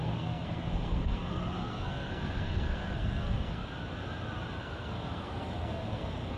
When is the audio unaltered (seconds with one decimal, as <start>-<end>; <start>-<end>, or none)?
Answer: 3.6-4.6